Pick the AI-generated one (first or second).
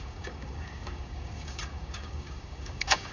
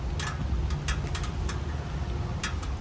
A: first